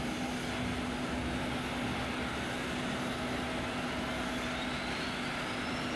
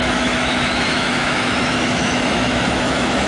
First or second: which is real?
first